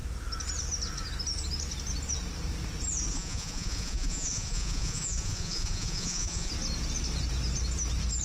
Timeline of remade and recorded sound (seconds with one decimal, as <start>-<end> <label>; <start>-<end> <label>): 0.0-3.1 recorded; 3.1-6.5 remade; 6.5-8.2 recorded